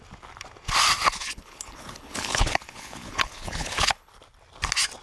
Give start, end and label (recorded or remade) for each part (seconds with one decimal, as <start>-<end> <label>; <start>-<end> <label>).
0.0-1.1 recorded; 1.1-4.1 remade; 4.1-5.0 recorded